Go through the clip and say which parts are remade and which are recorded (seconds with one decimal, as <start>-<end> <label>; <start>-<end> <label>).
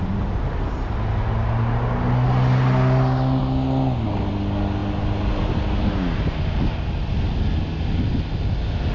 0.0-8.9 recorded